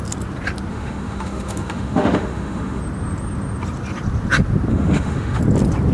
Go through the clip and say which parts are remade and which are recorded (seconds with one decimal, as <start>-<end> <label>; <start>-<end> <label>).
0.0-0.7 recorded; 0.7-2.8 remade; 2.8-4.7 recorded; 4.7-5.4 remade; 5.4-5.9 recorded